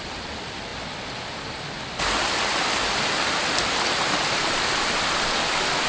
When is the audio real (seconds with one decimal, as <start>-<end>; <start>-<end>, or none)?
0.0-5.9